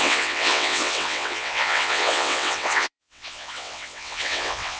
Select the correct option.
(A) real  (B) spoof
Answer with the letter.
B